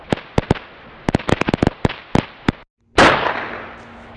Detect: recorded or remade recorded